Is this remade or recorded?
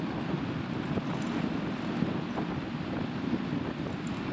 recorded